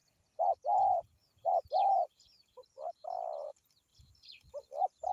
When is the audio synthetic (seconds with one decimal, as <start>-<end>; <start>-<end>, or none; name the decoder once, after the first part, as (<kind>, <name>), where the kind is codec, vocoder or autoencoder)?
0.0-2.9 (vocoder, BigVGAN v2); 3.9-5.1